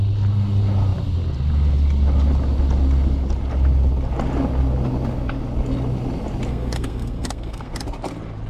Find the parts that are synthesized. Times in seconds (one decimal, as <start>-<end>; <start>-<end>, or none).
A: 6.5-7.7

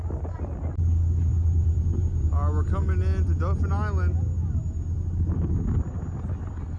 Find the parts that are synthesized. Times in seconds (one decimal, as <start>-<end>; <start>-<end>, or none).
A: none

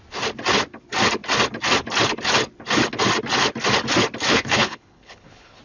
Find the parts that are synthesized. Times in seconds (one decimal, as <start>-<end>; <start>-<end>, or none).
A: 4.3-5.6